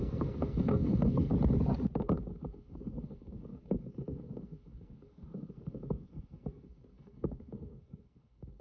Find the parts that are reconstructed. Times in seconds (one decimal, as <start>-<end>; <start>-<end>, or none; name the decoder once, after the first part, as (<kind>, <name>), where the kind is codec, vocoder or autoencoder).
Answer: 0.0-1.3 (codec, SNAC); 2.0-8.6